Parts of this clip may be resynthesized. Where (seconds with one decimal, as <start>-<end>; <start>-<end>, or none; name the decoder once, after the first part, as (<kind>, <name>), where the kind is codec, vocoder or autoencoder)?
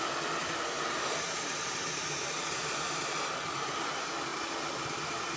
0.4-1.7 (vocoder, BigVGAN v2); 4.3-5.4